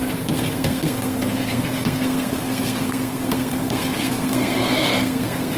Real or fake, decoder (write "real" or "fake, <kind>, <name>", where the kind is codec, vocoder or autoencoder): fake, codec, SNAC